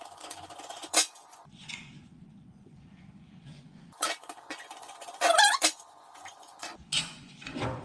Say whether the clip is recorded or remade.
remade